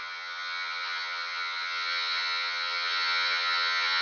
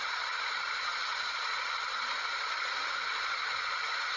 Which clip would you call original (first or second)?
second